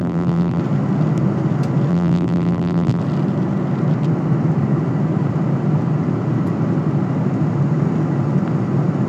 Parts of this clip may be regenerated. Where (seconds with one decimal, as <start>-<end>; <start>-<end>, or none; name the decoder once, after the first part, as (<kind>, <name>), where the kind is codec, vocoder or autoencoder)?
0.0-0.6 (vocoder, BigVGAN v2); 1.9-3.0